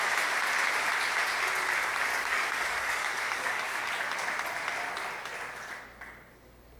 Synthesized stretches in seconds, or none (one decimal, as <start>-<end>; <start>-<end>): 2.1-3.9